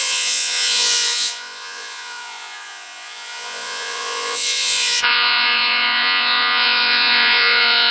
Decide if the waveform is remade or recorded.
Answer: remade